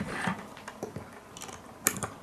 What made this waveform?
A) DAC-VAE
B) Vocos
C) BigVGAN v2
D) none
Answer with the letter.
D